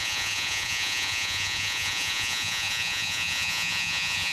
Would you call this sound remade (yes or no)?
yes